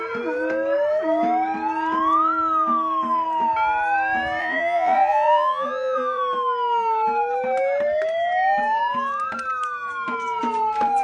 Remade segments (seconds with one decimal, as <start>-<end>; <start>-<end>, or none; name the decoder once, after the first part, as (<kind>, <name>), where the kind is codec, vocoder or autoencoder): 4.4-6.2 (vocoder, Vocos)

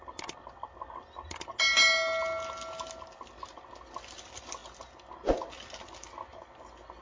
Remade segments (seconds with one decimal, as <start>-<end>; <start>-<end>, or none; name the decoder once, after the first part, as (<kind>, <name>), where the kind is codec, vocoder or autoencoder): none

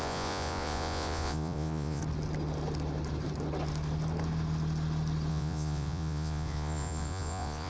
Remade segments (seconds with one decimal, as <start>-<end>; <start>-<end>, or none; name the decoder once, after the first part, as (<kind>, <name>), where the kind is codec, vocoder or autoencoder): 0.0-2.0 (vocoder, Vocos); 5.3-7.7

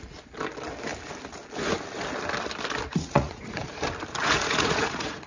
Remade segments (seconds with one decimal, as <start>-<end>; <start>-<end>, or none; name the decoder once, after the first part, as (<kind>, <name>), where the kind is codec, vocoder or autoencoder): 2.9-3.6 (vocoder, Vocos); 4.2-5.3

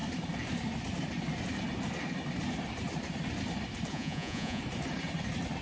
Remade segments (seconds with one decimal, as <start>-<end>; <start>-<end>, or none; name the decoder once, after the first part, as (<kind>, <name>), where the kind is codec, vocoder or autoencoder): 3.9-4.6 (vocoder, Vocos)

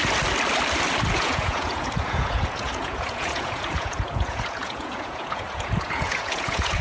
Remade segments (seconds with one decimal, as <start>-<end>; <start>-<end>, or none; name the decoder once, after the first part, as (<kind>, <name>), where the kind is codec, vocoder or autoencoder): 1.1-6.8 (vocoder, Vocos)

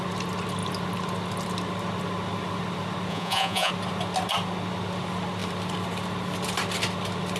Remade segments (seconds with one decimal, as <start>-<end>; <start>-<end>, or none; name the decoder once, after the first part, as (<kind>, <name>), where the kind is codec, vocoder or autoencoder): 3.1-3.7 (vocoder, Vocos)